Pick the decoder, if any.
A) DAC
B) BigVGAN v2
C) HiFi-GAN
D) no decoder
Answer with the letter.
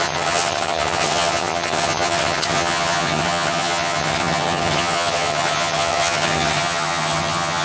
C